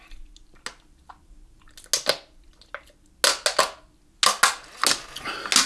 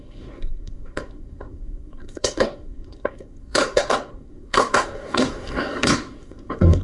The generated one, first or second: second